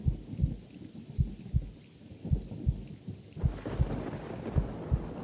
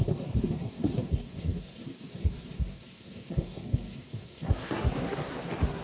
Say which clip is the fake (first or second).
second